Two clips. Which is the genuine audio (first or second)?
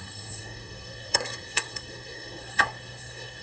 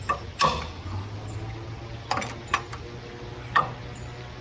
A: second